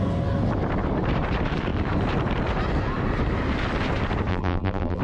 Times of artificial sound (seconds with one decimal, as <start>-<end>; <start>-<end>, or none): 4.3-5.0